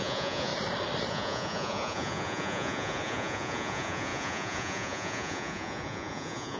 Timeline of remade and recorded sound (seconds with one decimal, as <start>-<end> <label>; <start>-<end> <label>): 0.0-0.5 remade; 0.5-1.1 recorded; 1.1-6.6 remade

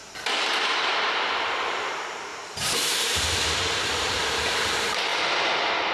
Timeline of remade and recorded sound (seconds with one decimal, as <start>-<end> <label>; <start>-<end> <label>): 0.0-1.2 recorded; 1.2-5.1 remade; 5.1-5.9 recorded

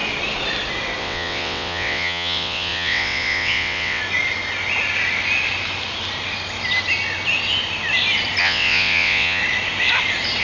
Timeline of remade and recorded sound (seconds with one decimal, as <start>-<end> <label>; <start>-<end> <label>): 0.0-1.0 recorded; 1.0-4.0 remade; 4.0-8.4 recorded; 8.4-9.4 remade; 9.4-10.4 recorded

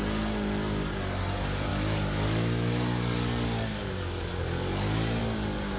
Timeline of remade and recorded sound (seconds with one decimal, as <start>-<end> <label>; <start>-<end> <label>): 0.0-1.7 recorded; 1.7-5.2 remade; 5.2-5.8 recorded

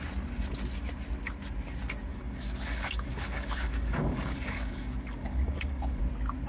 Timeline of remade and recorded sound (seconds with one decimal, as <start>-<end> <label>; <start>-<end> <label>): 0.0-2.1 recorded; 2.1-6.0 remade; 6.0-6.5 recorded

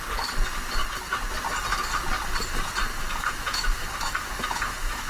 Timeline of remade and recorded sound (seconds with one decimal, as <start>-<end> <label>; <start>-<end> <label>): 0.0-2.9 recorded; 2.9-5.1 remade

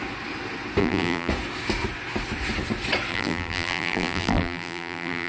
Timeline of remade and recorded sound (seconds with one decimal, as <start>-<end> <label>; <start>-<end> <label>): 0.0-0.8 recorded; 0.8-1.3 remade; 1.3-3.1 recorded; 3.1-5.3 remade

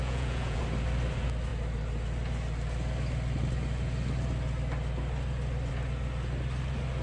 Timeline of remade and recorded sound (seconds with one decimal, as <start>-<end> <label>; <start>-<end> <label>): 0.0-0.6 remade; 0.6-7.0 recorded